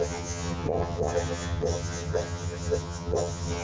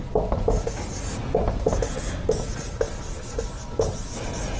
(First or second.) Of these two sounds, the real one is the second